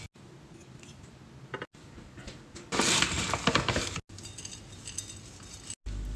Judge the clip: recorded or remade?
recorded